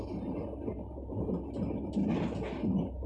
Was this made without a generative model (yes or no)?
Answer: yes